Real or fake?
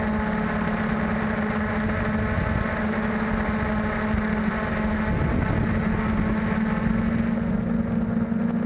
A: real